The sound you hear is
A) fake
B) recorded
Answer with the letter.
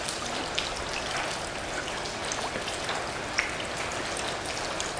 B